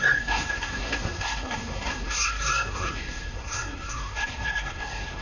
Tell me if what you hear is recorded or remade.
remade